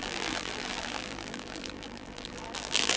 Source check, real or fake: fake